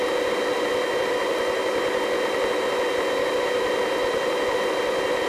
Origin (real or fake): real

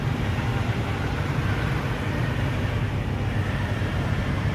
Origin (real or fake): fake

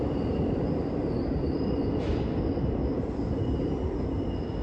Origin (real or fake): real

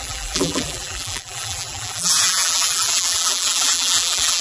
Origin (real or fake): fake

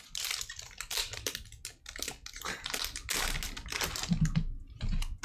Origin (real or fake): real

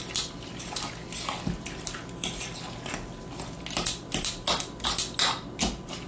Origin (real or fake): real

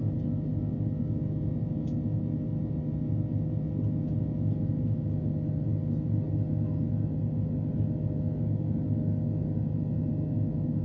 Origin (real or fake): real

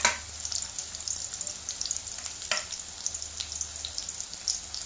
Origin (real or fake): real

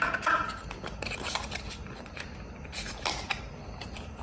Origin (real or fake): fake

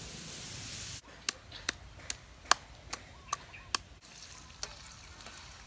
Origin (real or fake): real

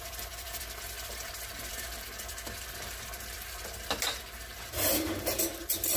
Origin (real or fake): fake